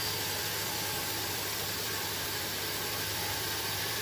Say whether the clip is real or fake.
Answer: fake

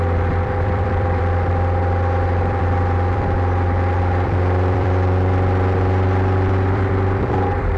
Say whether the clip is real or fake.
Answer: fake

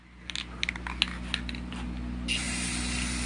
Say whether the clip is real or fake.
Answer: real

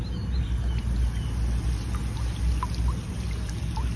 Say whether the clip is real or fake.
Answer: real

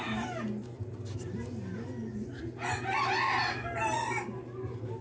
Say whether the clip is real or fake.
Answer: real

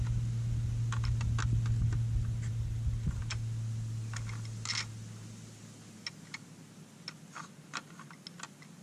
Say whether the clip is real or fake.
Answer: real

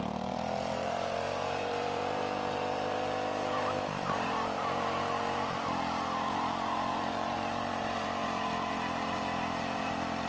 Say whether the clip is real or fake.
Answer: fake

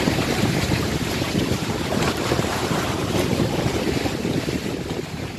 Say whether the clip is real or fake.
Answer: fake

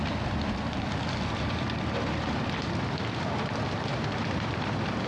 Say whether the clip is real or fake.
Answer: fake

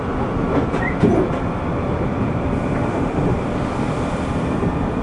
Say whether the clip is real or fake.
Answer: fake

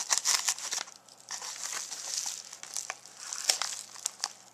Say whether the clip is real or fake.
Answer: real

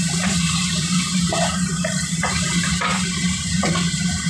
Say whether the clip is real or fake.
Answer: fake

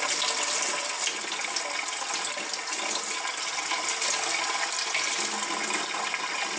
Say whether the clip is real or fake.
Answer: real